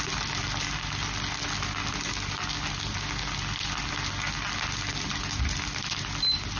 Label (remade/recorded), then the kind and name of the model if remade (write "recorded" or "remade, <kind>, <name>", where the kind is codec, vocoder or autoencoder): recorded